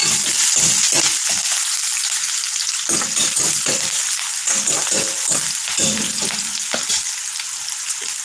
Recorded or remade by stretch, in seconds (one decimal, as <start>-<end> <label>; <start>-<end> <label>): 0.0-8.2 recorded